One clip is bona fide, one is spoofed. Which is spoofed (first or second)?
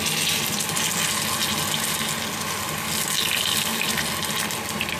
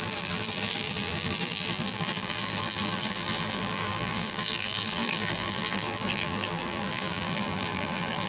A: second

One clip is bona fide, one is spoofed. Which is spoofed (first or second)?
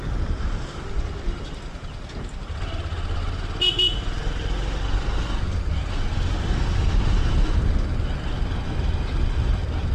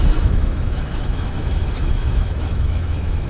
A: second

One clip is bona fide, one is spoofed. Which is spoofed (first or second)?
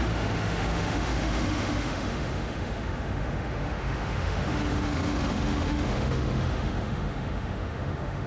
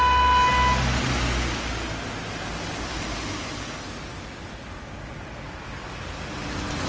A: first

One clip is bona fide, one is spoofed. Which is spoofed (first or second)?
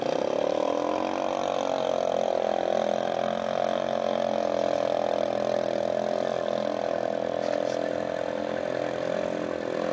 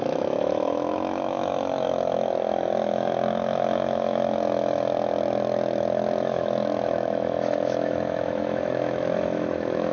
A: second